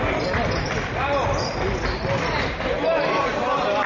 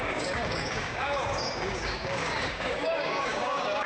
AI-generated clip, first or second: second